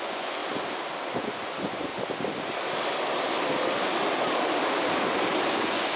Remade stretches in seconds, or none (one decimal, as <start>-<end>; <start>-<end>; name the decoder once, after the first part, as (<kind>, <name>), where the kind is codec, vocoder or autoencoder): 0.0-0.4 (vocoder, Vocos); 1.1-1.9; 5.5-6.0